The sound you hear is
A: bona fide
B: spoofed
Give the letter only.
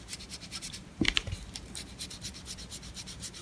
B